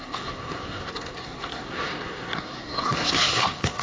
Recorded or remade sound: remade